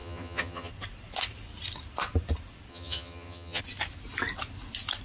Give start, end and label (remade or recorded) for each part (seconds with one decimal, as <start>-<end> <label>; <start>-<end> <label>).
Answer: 0.0-0.7 remade; 0.7-2.7 recorded; 2.7-3.6 remade; 3.6-5.0 recorded